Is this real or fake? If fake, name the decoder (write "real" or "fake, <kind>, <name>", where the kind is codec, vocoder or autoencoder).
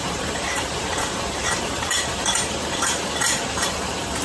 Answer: fake, vocoder, BigVGAN v2